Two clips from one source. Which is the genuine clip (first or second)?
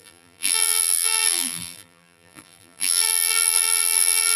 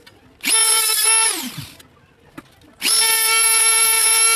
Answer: second